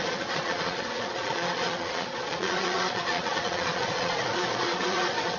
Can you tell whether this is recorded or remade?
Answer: remade